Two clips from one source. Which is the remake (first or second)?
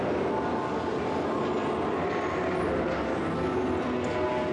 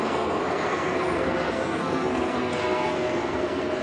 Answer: second